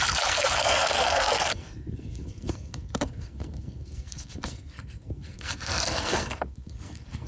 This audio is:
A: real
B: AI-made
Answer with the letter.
B